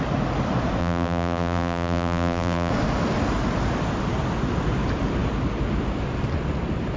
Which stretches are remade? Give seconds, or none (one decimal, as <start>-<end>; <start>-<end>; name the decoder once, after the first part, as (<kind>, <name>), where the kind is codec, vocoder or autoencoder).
0.8-2.7 (vocoder, BigVGAN v2)